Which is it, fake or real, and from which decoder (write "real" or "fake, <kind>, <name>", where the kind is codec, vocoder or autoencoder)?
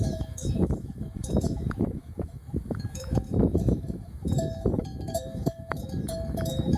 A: fake, autoencoder, DAC-VAE